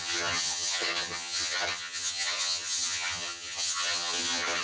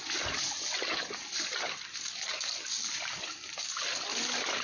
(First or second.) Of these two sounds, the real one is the second